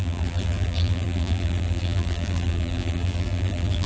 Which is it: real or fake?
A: fake